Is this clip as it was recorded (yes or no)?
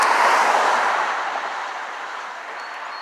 yes